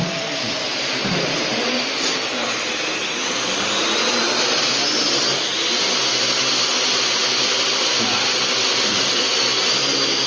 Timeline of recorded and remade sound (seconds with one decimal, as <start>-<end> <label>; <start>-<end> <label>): 0.0-1.0 remade; 1.0-4.0 recorded; 4.0-5.0 remade; 5.0-7.2 recorded; 7.2-7.9 remade; 7.9-10.3 recorded